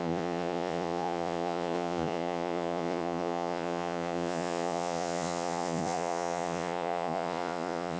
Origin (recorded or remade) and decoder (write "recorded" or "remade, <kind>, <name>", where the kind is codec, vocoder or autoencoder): remade, vocoder, Vocos